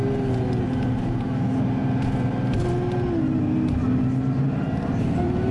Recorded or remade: recorded